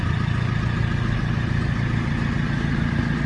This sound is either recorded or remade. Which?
recorded